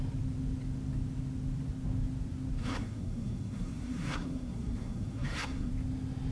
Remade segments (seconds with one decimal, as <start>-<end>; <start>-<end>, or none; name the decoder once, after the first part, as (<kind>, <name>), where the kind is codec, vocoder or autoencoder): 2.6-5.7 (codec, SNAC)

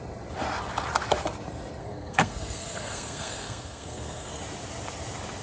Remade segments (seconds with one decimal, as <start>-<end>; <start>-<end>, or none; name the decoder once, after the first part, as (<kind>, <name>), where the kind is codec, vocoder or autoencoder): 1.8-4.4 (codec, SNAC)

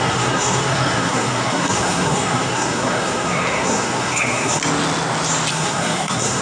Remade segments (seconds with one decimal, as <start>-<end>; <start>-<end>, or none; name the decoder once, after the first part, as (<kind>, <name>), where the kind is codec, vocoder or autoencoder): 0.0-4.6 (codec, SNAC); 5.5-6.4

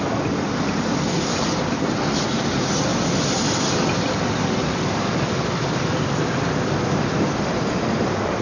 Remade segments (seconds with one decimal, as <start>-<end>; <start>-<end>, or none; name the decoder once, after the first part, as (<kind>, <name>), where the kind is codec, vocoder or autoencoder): none

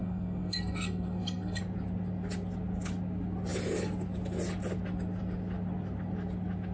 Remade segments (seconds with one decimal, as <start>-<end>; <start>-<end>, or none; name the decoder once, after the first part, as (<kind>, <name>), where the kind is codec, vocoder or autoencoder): 0.0-1.6 (codec, SNAC)

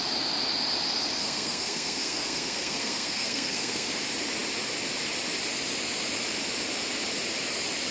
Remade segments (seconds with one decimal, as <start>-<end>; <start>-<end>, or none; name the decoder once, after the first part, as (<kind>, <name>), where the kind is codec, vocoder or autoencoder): 1.2-3.9 (codec, SNAC)

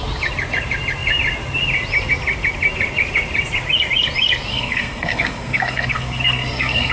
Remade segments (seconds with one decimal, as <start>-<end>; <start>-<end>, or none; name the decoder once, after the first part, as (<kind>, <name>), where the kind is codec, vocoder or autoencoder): 4.5-6.9 (codec, SNAC)